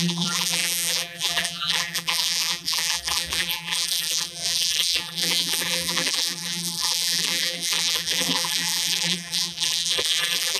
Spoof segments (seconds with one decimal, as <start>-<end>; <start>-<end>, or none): 0.0-10.6